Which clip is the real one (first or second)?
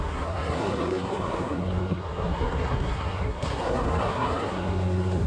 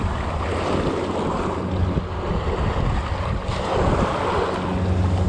second